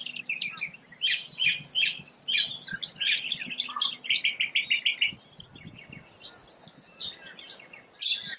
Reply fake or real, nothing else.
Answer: real